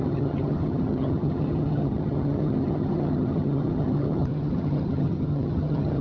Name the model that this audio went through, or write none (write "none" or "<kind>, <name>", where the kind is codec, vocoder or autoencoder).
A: vocoder, HiFi-GAN